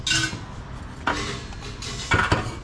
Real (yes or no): yes